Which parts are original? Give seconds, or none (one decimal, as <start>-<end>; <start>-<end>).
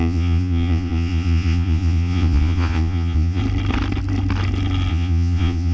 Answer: 3.4-4.9